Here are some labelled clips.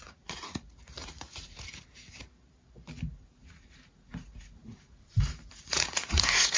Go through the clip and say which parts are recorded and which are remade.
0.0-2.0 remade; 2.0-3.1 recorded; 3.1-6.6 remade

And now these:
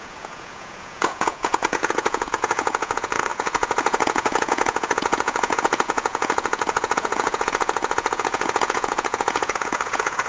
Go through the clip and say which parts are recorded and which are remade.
0.0-10.3 remade

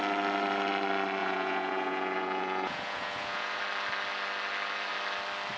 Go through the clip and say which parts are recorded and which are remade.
0.0-1.2 recorded; 1.2-3.6 remade; 3.6-5.6 recorded